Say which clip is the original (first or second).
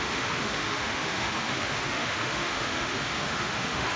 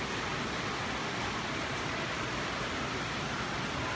second